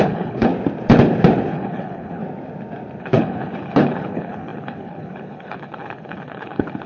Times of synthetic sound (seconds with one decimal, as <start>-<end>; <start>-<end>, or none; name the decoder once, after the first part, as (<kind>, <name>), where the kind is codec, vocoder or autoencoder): 0.0-0.5 (codec, HILCodec); 1.5-2.2; 3.0-6.9